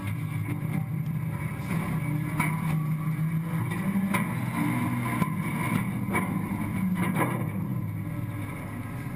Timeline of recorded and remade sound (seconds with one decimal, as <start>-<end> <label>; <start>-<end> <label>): 0.0-0.9 recorded; 0.9-1.7 remade; 1.7-5.5 recorded; 5.5-6.5 remade; 6.5-9.2 recorded

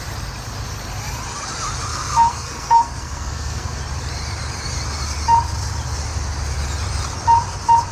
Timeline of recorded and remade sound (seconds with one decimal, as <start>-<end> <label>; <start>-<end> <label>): 0.0-1.9 recorded; 1.9-3.8 remade; 3.8-7.9 recorded

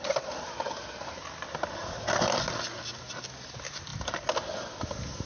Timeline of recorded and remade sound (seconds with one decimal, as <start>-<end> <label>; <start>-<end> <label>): 0.0-5.3 recorded